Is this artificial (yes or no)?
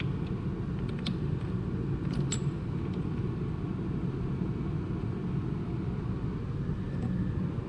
no